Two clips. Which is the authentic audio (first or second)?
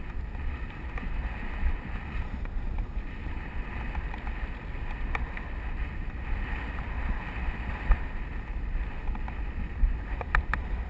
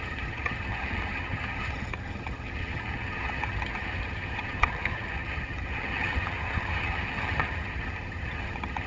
first